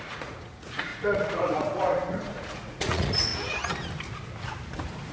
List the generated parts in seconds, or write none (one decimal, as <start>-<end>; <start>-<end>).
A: 0.0-3.3